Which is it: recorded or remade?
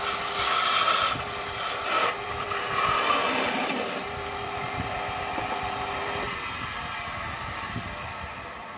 recorded